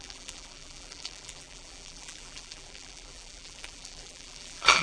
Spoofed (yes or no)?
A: yes